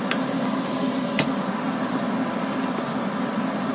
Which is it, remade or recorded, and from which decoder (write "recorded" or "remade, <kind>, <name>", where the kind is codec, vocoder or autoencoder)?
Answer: recorded